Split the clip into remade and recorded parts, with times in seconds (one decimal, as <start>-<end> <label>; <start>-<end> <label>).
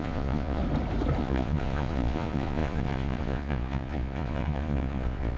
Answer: 0.0-0.6 remade; 0.6-1.2 recorded; 1.2-5.4 remade